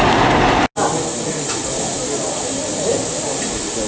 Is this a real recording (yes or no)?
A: yes